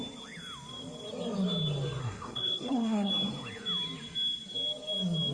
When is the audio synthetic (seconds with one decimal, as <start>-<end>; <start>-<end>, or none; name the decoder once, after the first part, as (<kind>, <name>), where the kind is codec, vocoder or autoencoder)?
2.0-3.1 (codec, SNAC)